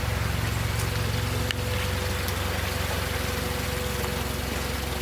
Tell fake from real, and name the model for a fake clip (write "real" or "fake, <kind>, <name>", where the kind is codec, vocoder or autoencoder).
real